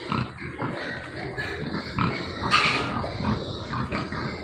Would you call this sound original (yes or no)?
yes